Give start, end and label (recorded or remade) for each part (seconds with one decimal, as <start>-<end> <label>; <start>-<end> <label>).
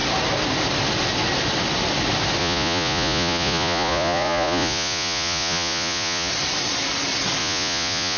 0.0-2.4 recorded; 2.4-6.3 remade; 6.3-7.4 recorded; 7.4-8.2 remade